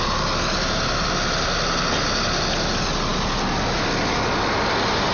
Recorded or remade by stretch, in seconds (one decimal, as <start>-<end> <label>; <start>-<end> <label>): 0.0-5.1 recorded